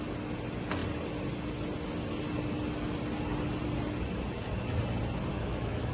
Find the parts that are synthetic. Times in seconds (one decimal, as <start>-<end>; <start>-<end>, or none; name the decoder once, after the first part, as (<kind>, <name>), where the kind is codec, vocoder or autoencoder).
5.3-5.9 (autoencoder, DAC-VAE)